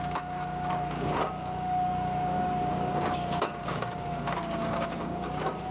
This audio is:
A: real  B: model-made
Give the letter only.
B